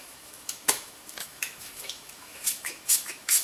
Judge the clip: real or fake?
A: fake